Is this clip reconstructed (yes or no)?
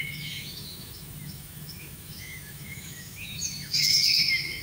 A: yes